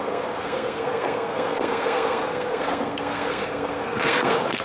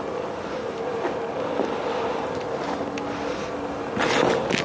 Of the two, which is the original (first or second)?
second